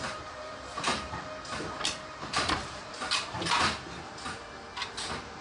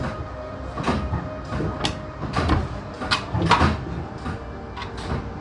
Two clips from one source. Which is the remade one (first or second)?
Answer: first